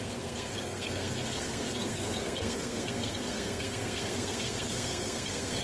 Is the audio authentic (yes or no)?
no